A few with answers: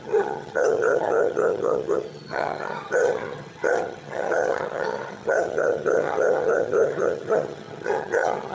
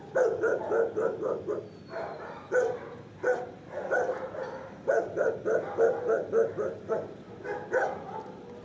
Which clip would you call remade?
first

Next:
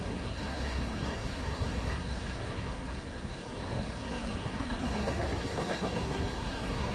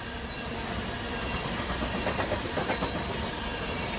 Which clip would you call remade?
first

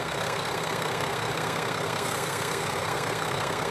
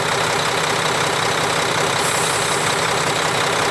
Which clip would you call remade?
first